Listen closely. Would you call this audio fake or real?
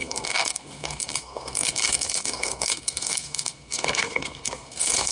fake